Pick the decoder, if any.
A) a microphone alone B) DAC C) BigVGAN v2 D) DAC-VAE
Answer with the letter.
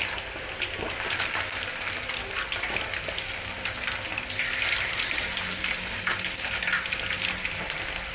A